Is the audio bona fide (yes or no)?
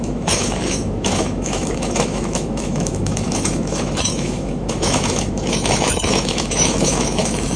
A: no